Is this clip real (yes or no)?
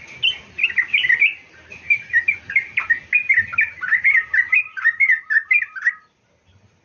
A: yes